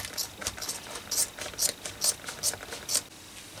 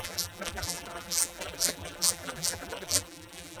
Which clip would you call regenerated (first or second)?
second